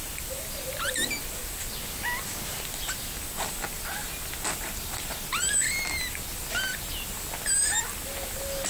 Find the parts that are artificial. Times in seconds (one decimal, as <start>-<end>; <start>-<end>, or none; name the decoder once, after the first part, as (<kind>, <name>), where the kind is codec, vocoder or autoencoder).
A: none